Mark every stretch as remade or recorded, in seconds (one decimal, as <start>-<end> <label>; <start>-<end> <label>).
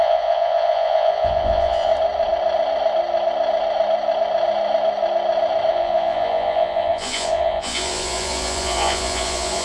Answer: 0.0-1.9 remade; 1.9-5.7 recorded; 5.7-9.6 remade